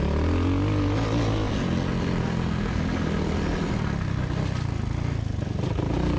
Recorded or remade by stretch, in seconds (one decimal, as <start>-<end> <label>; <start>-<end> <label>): 0.0-2.2 recorded; 2.2-2.8 remade; 2.8-6.2 recorded